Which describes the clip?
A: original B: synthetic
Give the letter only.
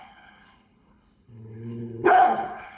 B